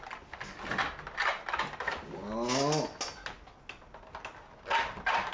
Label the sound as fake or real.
real